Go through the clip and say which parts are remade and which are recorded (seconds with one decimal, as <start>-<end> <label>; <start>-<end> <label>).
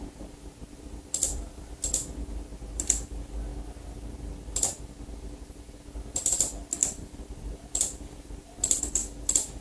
0.0-0.6 recorded; 0.6-1.9 remade; 1.9-6.8 recorded; 6.8-8.8 remade; 8.8-9.6 recorded